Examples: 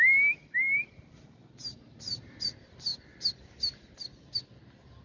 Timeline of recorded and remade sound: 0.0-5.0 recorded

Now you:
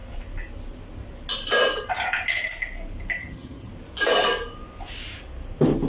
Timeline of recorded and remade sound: 0.0-3.2 recorded; 3.2-3.7 remade; 3.7-5.9 recorded

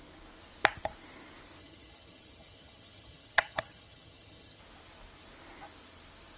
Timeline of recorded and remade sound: 0.0-1.6 recorded; 1.6-4.6 remade; 4.6-6.4 recorded

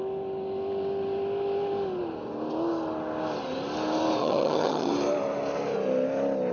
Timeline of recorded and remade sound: 0.0-4.2 recorded; 4.2-4.9 remade; 4.9-6.5 recorded

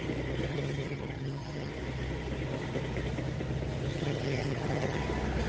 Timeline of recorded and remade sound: 0.0-0.5 recorded; 0.5-1.7 remade; 1.7-3.9 recorded; 3.9-5.0 remade; 5.0-5.5 recorded